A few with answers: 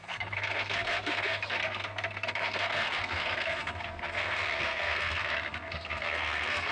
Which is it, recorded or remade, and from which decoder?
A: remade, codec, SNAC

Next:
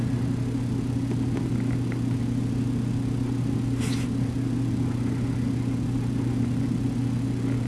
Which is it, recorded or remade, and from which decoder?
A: recorded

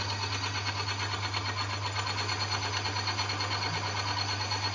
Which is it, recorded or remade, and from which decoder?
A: recorded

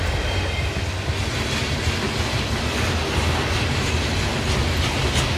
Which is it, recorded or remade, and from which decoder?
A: recorded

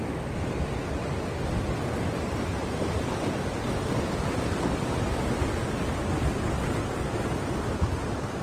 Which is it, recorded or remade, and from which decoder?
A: recorded